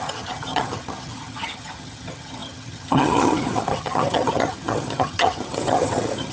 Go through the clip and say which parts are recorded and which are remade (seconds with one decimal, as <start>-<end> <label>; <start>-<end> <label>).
0.0-6.3 remade